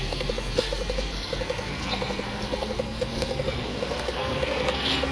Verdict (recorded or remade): remade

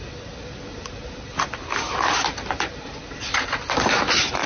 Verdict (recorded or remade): recorded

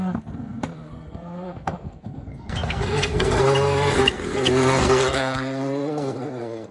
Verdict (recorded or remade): remade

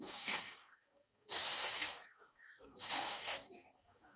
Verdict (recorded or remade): remade